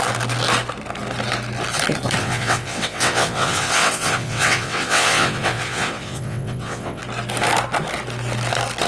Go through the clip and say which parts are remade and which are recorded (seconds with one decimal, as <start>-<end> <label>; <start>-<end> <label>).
0.0-2.2 recorded; 2.2-7.0 remade; 7.0-8.9 recorded